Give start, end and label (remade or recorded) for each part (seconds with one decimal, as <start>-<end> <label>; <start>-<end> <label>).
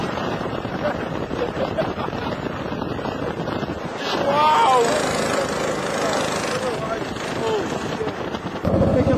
0.0-2.3 remade; 2.3-9.2 recorded